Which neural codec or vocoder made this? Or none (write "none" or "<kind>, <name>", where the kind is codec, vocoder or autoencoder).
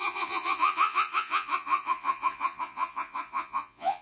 vocoder, Vocos